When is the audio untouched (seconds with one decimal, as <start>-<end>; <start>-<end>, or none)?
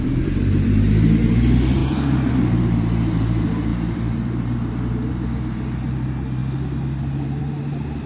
6.4-7.4